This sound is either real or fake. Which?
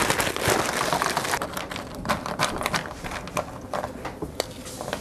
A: real